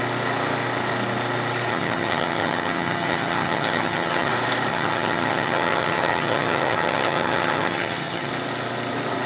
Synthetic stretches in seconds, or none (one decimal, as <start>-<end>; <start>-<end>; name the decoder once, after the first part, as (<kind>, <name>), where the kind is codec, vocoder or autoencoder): 1.7-4.3 (vocoder, HiFi-GAN); 4.7-8.3